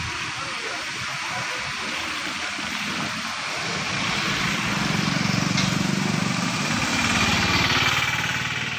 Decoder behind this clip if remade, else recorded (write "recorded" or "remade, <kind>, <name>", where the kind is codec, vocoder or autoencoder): recorded